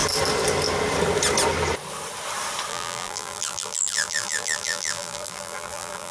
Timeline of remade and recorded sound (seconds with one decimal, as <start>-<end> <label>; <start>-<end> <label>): 0.0-2.7 recorded; 2.7-6.1 remade